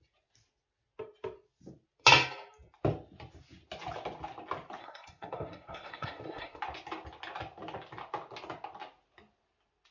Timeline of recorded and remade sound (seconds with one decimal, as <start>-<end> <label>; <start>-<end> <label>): 0.0-4.8 recorded; 4.8-6.6 remade; 6.6-9.9 recorded